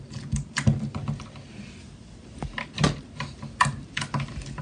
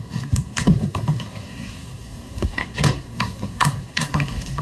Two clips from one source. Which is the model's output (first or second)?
second